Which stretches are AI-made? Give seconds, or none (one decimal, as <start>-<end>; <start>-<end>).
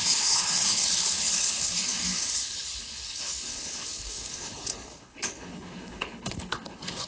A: 0.0-7.1